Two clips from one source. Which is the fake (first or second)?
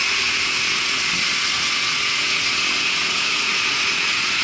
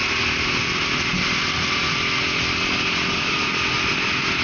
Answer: first